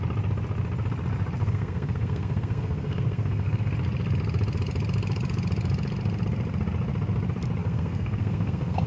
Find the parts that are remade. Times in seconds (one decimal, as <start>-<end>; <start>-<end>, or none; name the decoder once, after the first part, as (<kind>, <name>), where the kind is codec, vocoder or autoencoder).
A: 1.4-3.7 (codec, SNAC); 7.6-8.9